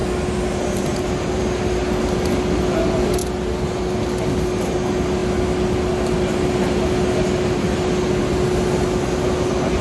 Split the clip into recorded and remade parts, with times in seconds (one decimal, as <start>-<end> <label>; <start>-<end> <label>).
0.0-9.8 recorded